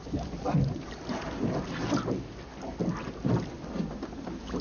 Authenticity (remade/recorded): recorded